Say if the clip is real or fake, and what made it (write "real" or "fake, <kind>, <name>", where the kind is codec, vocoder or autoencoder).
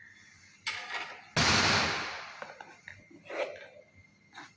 real